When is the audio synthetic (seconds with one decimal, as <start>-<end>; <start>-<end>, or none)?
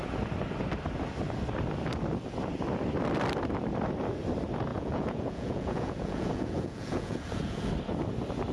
4.7-7.7